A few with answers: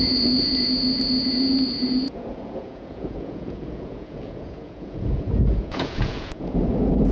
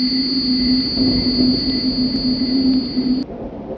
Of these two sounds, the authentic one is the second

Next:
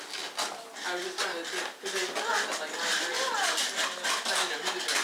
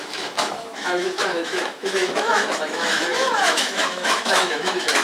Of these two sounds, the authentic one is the first